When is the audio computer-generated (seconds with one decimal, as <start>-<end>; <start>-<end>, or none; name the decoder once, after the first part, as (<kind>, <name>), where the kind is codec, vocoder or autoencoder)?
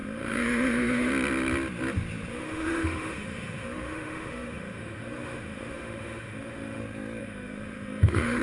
0.0-1.1 (autoencoder, DAC-VAE); 2.3-6.8; 7.2-8.4